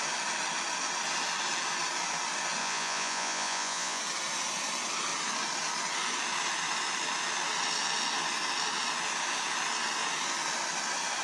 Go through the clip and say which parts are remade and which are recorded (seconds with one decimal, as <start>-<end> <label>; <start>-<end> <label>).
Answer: 0.0-2.6 recorded; 2.6-4.0 remade; 4.0-11.2 recorded